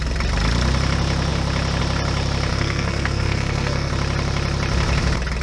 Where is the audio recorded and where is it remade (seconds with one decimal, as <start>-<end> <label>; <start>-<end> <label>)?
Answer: 0.0-2.5 recorded; 2.5-3.9 remade; 3.9-5.4 recorded